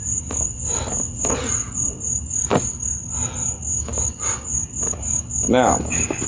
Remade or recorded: recorded